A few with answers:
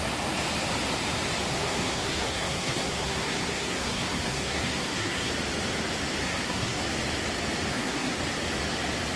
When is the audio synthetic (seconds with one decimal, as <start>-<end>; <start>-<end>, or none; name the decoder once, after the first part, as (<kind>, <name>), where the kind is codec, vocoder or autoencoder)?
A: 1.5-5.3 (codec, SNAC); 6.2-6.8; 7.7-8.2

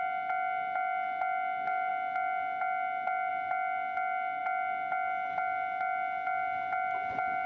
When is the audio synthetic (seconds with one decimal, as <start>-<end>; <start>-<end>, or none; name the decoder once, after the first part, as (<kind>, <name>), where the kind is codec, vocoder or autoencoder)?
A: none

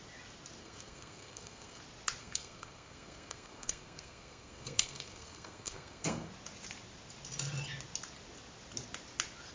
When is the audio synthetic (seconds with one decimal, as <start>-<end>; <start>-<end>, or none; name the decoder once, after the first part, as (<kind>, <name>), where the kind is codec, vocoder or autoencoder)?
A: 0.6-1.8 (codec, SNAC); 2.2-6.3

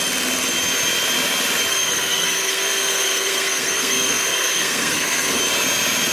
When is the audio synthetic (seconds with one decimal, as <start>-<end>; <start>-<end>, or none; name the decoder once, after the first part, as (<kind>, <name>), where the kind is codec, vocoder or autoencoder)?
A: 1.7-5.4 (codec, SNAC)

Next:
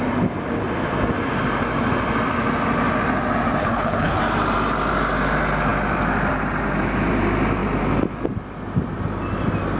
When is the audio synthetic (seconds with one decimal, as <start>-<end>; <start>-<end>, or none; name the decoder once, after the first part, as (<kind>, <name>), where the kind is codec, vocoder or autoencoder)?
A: 3.6-4.2 (codec, HILCodec)

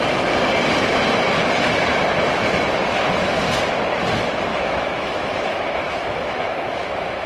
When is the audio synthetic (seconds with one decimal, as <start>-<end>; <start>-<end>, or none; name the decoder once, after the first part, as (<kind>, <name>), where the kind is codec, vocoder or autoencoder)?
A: 4.5-7.3 (autoencoder, DAC-VAE)

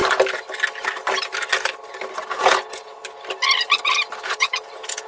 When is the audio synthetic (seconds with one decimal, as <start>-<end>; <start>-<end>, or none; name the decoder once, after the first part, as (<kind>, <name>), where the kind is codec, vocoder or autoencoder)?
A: 2.3-3.0 (vocoder, Vocos); 4.2-5.1